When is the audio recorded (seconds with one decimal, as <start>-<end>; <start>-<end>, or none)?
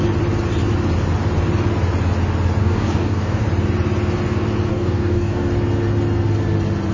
0.0-2.6; 3.4-4.7; 5.5-6.9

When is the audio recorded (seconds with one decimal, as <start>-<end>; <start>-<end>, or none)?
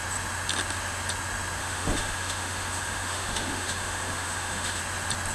0.0-1.6; 4.8-5.3